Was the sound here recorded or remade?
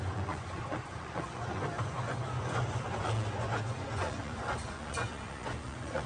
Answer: remade